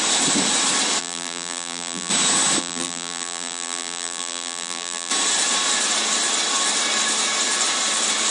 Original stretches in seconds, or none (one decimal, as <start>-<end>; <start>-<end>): 0.0-1.0; 2.1-2.6; 5.1-8.3

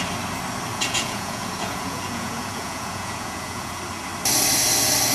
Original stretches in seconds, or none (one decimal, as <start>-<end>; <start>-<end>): 0.0-0.7; 3.8-5.1

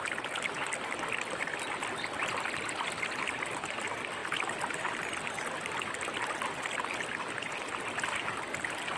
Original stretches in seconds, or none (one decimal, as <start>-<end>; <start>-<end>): 0.0-9.0

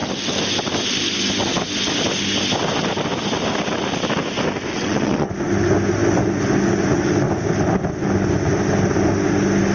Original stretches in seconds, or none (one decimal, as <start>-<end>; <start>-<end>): 0.0-4.7; 5.3-9.7

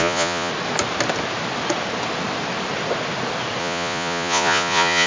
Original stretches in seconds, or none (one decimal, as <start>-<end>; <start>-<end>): 0.5-3.6

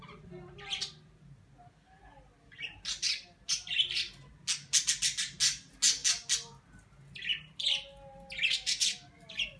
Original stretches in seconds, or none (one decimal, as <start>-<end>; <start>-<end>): 0.0-9.6

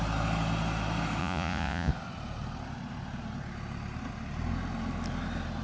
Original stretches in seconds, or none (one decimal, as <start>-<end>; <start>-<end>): 0.0-1.2; 1.9-5.6